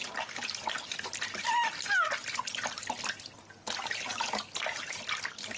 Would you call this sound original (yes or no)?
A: yes